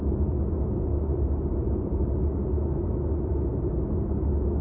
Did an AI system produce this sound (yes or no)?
no